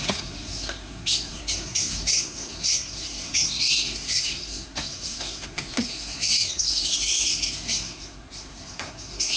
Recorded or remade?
remade